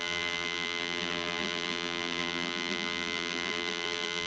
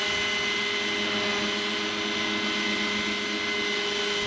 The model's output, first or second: first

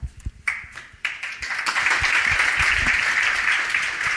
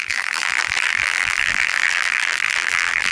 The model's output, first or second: second